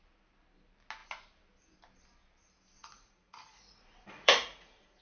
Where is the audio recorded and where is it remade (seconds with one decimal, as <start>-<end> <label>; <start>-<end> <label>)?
0.0-2.8 recorded; 2.8-5.0 remade